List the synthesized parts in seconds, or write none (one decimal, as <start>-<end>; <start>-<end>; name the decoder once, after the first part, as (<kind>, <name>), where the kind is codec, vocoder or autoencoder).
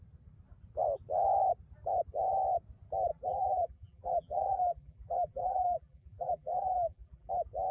3.1-7.3 (vocoder, BigVGAN v2)